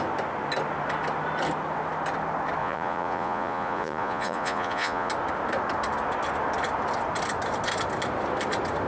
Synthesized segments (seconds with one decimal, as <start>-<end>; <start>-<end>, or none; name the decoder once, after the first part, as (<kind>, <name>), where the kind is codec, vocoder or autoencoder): 2.6-5.1 (vocoder, Vocos)